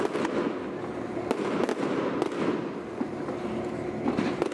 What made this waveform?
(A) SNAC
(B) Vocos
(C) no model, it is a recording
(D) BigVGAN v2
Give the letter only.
C